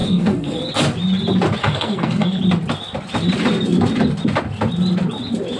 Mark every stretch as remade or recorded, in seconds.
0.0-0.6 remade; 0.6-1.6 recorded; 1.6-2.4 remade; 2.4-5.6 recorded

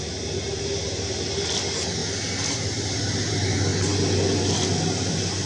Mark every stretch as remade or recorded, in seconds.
0.0-5.5 recorded

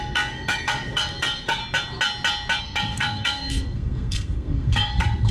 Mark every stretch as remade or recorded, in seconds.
0.0-1.6 remade; 1.6-2.6 recorded; 2.6-5.3 remade

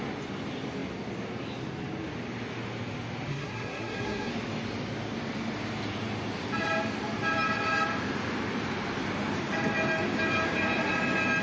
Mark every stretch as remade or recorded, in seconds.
0.0-3.3 recorded; 3.3-4.3 remade; 4.3-11.4 recorded